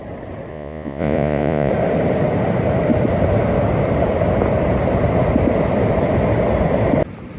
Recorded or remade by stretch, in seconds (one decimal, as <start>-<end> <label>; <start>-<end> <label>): 0.0-0.5 recorded; 0.5-1.7 remade; 1.7-7.4 recorded